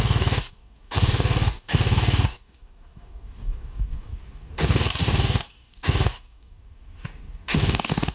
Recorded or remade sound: remade